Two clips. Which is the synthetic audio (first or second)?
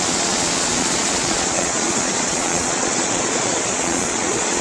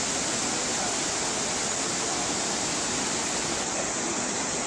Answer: first